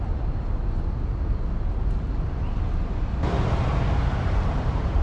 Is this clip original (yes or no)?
yes